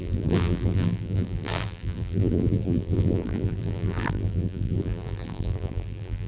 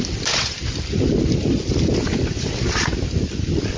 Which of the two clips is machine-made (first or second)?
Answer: first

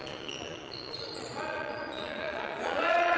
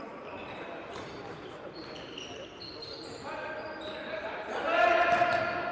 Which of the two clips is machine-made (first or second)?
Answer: first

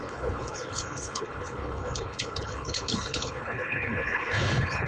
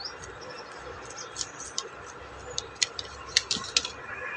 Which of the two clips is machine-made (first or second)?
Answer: first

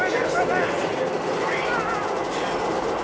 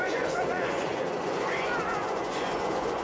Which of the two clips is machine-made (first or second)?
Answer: second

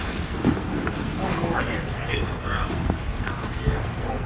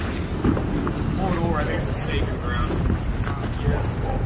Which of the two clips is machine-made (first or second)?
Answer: first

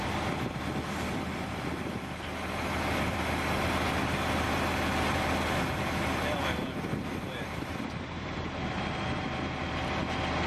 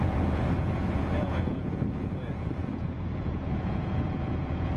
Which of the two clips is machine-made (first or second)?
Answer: second